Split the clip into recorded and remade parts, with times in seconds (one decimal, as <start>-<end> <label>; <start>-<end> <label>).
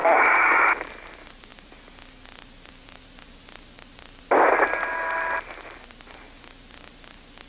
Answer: 0.0-0.7 remade; 0.7-7.5 recorded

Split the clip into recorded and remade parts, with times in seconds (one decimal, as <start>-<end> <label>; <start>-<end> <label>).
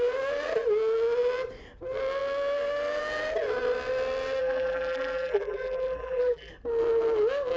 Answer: 0.0-4.4 recorded; 4.4-6.5 remade; 6.5-7.6 recorded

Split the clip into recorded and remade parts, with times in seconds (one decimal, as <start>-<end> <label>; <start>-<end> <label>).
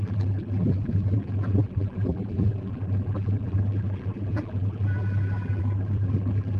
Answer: 0.0-6.6 remade